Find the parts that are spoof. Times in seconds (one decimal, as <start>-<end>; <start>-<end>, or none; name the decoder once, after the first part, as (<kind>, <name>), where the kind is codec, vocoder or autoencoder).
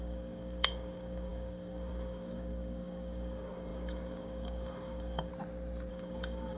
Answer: 0.0-5.3 (codec, DAC); 5.9-6.6